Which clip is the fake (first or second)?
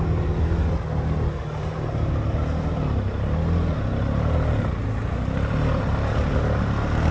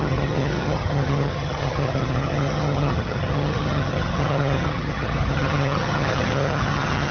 second